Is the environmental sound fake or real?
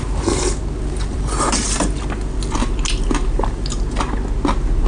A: real